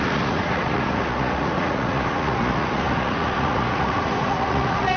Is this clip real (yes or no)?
no